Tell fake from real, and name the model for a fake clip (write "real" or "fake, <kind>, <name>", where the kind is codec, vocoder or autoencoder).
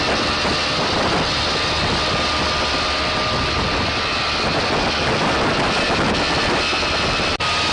real